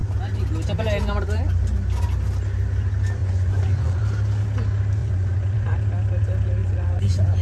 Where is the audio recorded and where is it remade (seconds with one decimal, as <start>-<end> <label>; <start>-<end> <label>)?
0.0-3.2 recorded; 3.2-4.0 remade; 4.0-5.0 recorded; 5.0-5.8 remade; 5.8-6.6 recorded; 6.6-7.4 remade